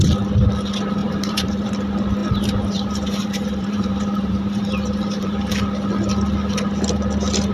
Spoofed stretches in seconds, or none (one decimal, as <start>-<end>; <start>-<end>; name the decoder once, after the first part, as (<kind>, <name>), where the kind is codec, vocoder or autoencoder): 1.0-1.7 (vocoder, BigVGAN v2); 2.2-5.5